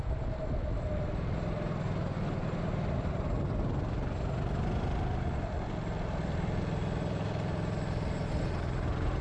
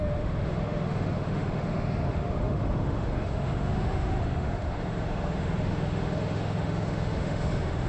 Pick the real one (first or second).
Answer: first